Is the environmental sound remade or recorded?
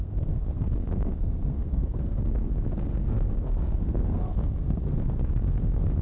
remade